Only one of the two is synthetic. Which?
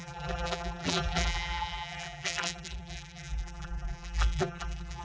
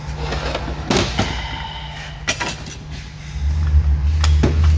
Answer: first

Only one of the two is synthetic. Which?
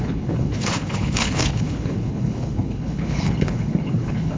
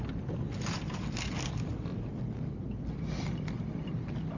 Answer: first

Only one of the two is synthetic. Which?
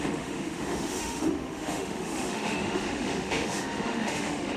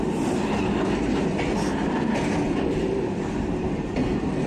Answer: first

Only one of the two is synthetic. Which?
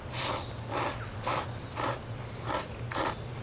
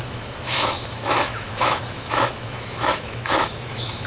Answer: second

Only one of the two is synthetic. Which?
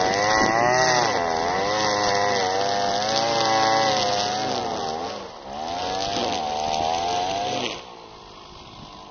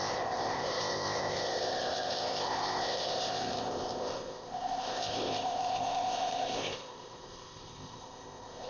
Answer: second